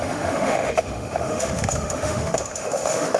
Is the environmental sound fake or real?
fake